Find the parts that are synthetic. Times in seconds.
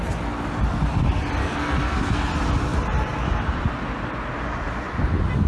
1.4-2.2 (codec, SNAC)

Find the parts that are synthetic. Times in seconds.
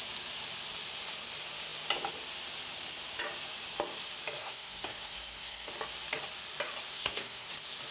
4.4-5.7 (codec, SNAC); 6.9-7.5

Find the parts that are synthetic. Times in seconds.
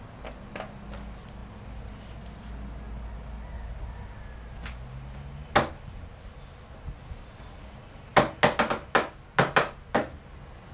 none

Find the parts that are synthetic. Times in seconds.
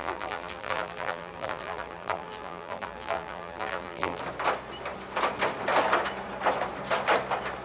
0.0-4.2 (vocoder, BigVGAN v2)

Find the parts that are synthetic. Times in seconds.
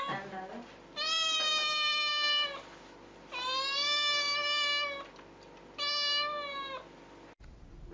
none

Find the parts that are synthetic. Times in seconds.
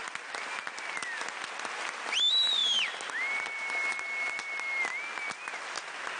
none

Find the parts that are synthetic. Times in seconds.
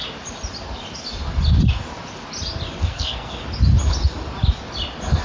2.8-3.4 (codec, SNAC)